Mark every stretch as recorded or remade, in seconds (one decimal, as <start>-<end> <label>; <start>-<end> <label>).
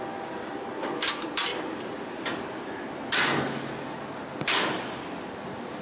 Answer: 0.0-1.5 recorded; 1.5-3.3 remade; 3.3-5.8 recorded